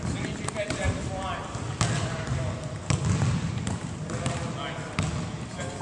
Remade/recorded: recorded